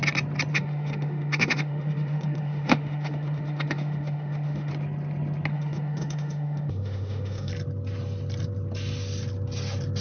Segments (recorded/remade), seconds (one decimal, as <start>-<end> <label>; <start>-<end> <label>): 0.0-0.5 recorded; 0.5-4.7 remade; 4.7-5.5 recorded; 5.5-7.5 remade; 7.5-10.0 recorded